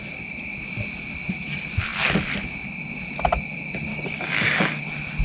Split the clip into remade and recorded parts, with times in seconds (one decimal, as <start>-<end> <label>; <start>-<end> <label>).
0.0-3.9 recorded; 3.9-4.8 remade; 4.8-5.2 recorded